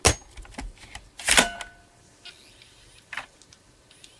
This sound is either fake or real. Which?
real